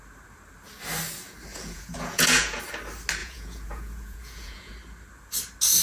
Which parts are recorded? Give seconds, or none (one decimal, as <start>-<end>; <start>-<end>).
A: 0.0-1.5; 2.6-3.2; 4.7-5.8